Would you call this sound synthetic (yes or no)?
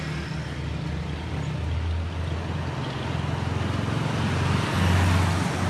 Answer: no